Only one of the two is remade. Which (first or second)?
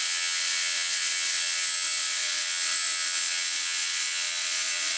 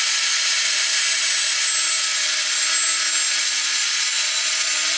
first